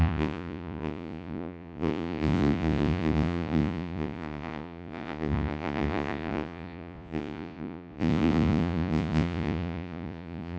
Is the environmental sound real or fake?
fake